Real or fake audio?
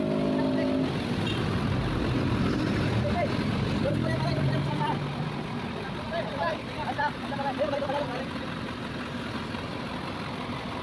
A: real